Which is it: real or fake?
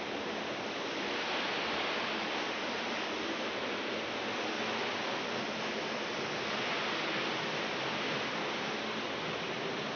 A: real